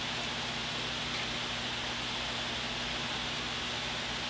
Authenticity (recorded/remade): recorded